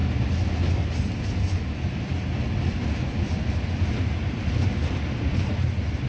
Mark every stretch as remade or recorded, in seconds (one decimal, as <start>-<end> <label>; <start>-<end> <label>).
0.0-3.7 recorded; 3.7-4.8 remade; 4.8-6.1 recorded